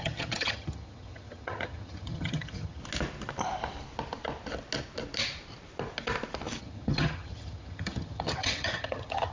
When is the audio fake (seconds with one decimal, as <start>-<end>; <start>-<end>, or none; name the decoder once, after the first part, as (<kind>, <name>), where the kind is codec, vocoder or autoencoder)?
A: 0.0-2.8 (vocoder, HiFi-GAN); 6.6-9.3